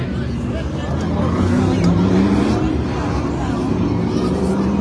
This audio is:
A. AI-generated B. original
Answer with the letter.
B